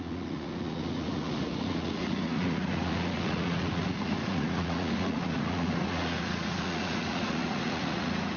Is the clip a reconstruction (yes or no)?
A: yes